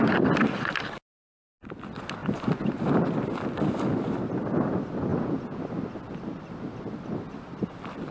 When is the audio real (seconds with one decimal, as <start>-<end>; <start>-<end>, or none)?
0.0-5.1; 5.6-8.1